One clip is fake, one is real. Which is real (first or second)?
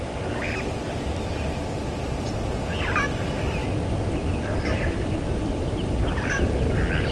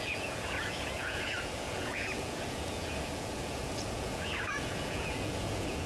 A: first